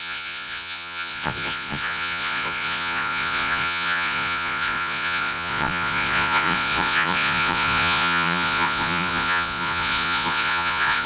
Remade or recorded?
remade